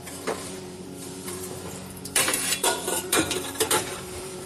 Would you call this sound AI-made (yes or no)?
yes